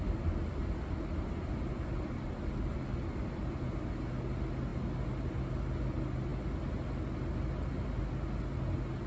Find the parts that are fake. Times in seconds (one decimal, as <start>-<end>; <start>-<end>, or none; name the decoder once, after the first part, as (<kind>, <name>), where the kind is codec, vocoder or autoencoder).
none